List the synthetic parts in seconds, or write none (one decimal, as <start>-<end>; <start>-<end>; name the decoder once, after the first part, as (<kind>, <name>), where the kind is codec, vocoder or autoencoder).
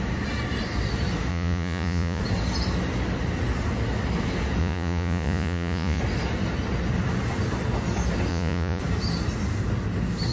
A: 1.3-2.2 (vocoder, Vocos); 4.6-6.0; 8.3-8.8